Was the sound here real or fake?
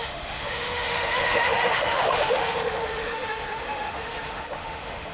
fake